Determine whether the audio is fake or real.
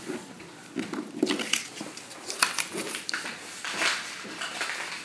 real